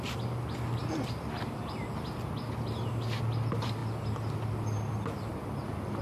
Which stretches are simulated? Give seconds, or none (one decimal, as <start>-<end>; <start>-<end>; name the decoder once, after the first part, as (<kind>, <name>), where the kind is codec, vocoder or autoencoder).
none